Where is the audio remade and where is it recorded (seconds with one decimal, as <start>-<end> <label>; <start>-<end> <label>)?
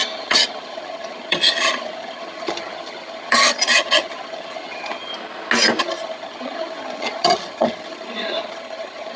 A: 0.0-5.1 remade; 5.1-5.8 recorded; 5.8-9.2 remade